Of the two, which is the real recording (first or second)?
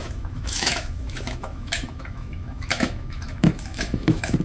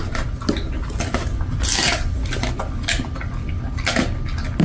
second